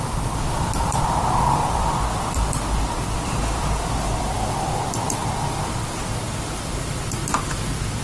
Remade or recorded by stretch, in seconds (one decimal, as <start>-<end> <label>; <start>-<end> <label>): 0.0-8.0 remade